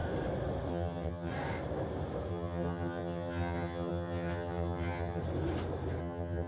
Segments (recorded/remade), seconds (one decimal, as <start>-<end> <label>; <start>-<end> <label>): 0.0-0.7 recorded; 0.7-1.3 remade; 1.3-2.3 recorded; 2.3-5.2 remade; 5.2-6.0 recorded; 6.0-6.5 remade